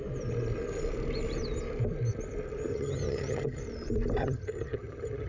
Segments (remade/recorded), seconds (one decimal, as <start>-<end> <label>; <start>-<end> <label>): 0.0-2.7 recorded; 2.7-3.6 remade; 3.6-4.2 recorded; 4.2-5.3 remade